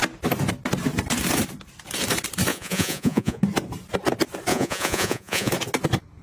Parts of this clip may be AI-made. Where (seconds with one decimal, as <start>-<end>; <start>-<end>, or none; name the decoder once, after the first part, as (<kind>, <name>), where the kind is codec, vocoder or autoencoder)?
2.5-3.4 (vocoder, Vocos); 4.5-5.5